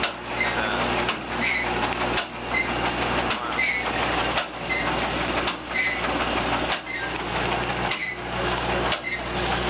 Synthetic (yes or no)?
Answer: no